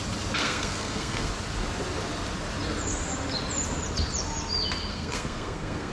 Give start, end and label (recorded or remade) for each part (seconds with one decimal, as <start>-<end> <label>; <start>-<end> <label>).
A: 0.0-0.4 recorded; 0.4-1.3 remade; 1.3-4.9 recorded; 4.9-5.9 remade